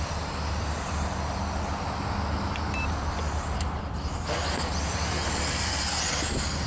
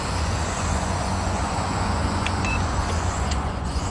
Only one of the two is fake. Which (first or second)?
second